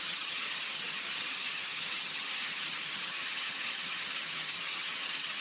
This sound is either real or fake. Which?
fake